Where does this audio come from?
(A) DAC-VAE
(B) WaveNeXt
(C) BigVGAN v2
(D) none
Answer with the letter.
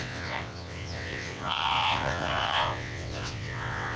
B